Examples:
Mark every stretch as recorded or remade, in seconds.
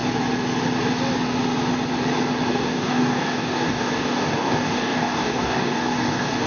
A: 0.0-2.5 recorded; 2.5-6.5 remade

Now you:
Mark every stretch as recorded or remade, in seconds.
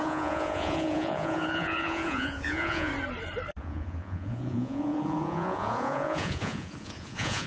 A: 0.0-2.9 remade; 2.9-3.6 recorded; 3.6-7.5 remade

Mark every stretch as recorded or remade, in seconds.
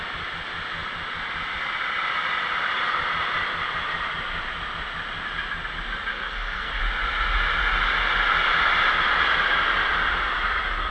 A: 0.0-6.1 recorded; 6.1-6.8 remade; 6.8-10.9 recorded